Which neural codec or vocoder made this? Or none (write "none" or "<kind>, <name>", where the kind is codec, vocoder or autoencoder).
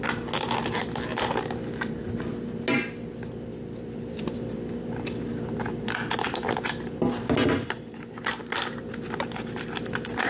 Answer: none